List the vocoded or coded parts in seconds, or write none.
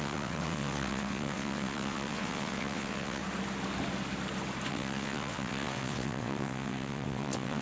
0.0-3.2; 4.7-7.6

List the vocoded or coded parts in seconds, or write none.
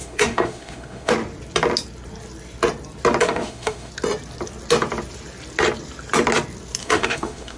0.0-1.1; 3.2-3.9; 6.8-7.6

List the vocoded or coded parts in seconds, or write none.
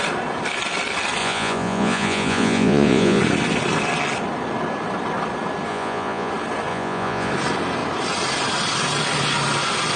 1.2-3.2; 5.7-6.3; 6.7-7.3